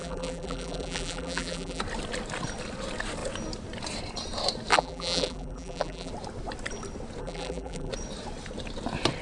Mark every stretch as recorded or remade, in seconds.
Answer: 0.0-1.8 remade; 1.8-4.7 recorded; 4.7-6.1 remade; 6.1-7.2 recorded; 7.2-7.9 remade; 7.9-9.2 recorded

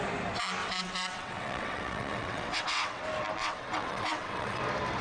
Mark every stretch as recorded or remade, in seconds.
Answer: 0.0-0.6 recorded; 0.6-3.0 remade; 3.0-3.4 recorded; 3.4-4.6 remade; 4.6-5.0 recorded

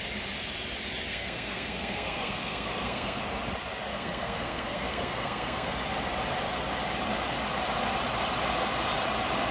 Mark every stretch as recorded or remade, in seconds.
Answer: 0.0-1.1 recorded; 1.1-3.2 remade; 3.2-3.9 recorded; 3.9-5.7 remade; 5.7-9.5 recorded

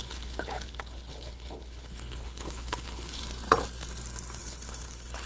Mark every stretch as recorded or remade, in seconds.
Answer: 0.0-3.2 remade; 3.2-4.4 recorded; 4.4-5.3 remade

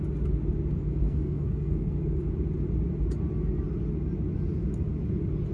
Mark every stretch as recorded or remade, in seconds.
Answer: 0.0-0.8 recorded; 0.8-2.2 remade; 2.2-5.5 recorded

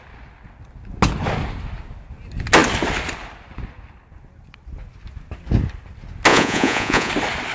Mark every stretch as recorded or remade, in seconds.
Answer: 0.0-6.3 recorded; 6.3-7.1 remade; 7.1-7.5 recorded

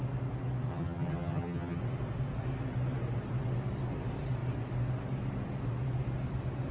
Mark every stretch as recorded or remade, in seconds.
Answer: 0.0-0.7 recorded; 0.7-1.8 remade; 1.8-6.7 recorded

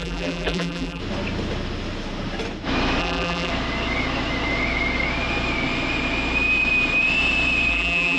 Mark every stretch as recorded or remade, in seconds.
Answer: 0.0-1.0 remade; 1.0-3.0 recorded; 3.0-3.5 remade; 3.5-7.7 recorded; 7.7-8.2 remade